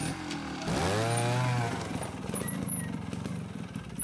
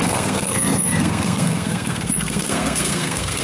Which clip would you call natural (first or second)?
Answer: first